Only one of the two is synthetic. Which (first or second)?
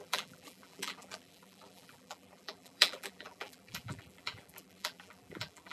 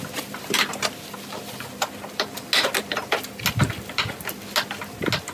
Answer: first